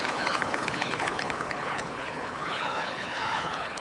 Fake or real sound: fake